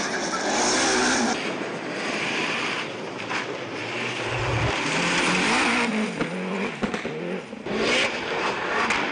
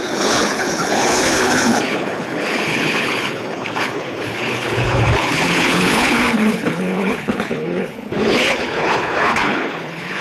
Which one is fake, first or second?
second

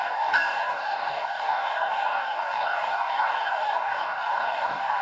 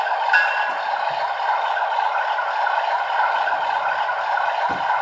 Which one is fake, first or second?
first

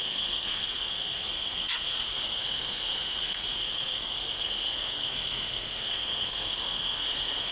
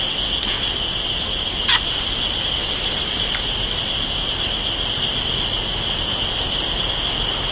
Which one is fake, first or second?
first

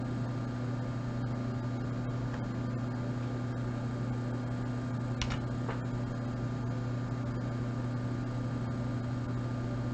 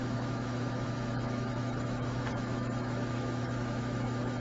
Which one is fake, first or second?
second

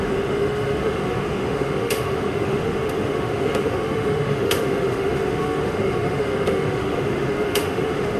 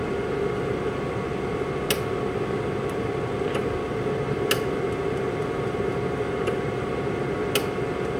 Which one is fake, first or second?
first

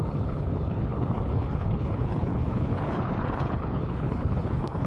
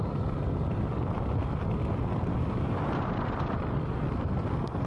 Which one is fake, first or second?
first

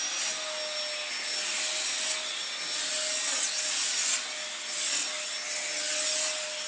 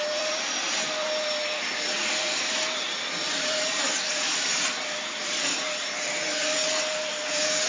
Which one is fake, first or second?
second